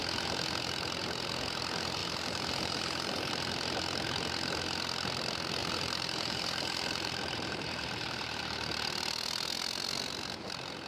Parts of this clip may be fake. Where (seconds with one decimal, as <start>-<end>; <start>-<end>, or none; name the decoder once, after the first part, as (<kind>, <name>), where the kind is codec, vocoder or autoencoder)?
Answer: 2.0-3.3 (vocoder, BigVGAN v2); 5.6-8.4